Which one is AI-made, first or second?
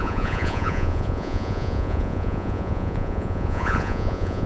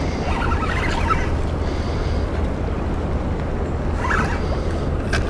first